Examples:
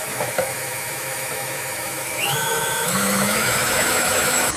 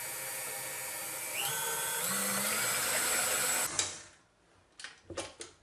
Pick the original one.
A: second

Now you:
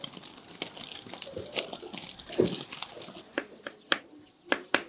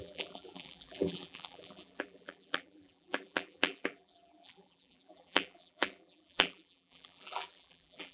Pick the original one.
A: first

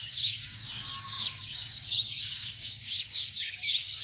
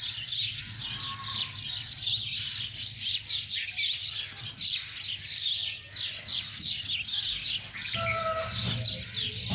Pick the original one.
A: second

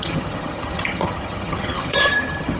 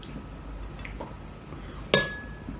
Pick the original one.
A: second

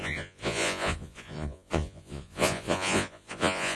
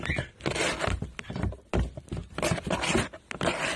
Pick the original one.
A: second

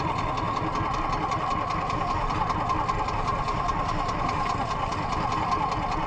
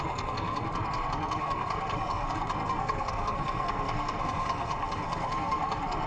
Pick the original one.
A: first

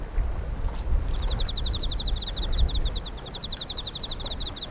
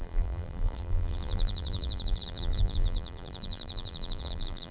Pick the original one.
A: first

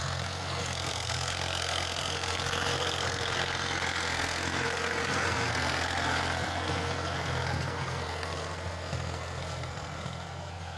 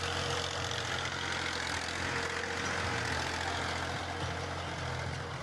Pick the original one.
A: second